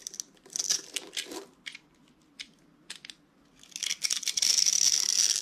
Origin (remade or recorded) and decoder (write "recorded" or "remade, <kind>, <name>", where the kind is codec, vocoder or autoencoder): recorded